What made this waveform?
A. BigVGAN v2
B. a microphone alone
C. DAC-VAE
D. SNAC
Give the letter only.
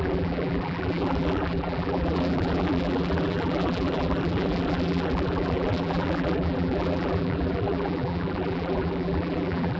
A